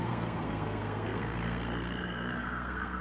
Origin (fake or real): fake